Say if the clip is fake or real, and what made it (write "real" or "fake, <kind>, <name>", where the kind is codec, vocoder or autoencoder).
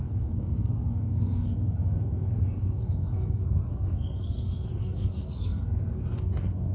fake, codec, SNAC